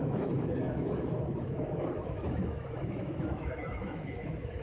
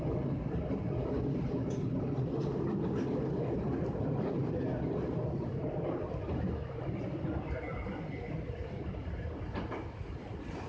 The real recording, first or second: second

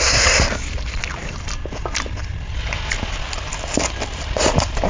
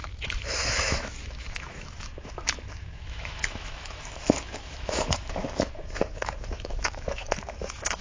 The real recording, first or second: first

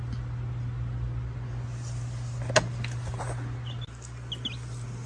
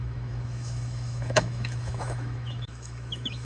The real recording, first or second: first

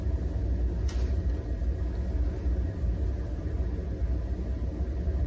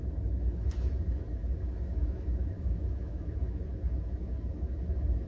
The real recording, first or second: first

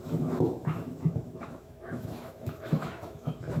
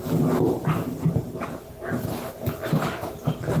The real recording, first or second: second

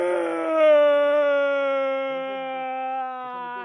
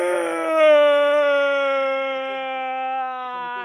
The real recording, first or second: first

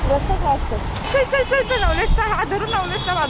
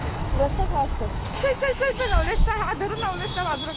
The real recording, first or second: first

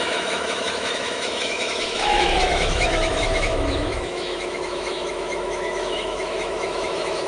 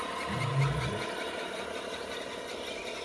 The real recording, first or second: second